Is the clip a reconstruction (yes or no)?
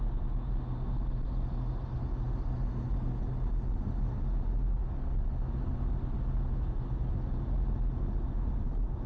no